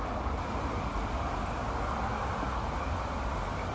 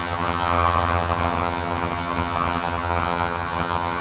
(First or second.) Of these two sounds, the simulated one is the second